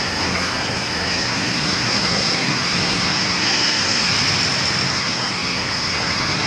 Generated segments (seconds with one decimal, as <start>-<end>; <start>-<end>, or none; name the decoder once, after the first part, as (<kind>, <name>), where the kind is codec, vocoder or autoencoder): 0.0-4.1 (codec, SNAC); 4.9-6.5